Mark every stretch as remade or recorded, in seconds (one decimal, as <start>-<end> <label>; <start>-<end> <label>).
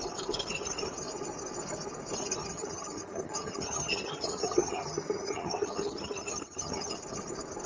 0.0-2.4 recorded; 2.4-7.0 remade; 7.0-7.7 recorded